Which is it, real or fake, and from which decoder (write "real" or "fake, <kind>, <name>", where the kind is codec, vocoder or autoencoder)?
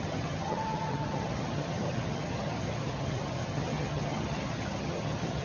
fake, vocoder, HiFi-GAN